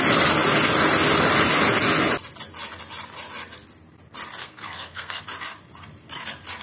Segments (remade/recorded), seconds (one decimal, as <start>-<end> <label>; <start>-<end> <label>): 0.0-4.4 recorded; 4.4-5.2 remade; 5.2-6.6 recorded